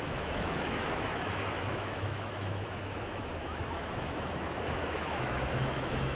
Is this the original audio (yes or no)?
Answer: no